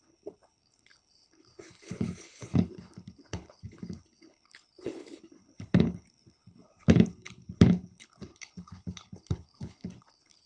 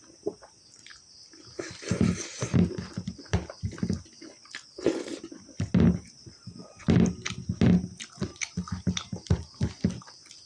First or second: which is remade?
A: first